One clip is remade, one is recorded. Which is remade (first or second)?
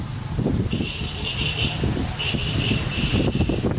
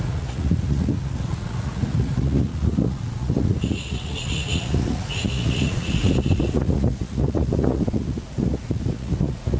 second